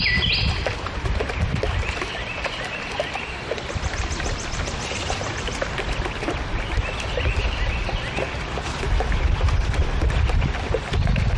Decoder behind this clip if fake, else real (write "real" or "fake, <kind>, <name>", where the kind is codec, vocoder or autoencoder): real